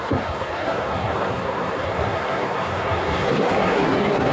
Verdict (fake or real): fake